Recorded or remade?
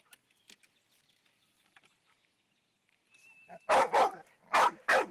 recorded